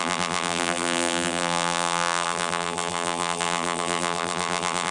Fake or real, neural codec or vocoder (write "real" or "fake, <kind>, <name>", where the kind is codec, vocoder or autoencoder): fake, vocoder, BigVGAN v2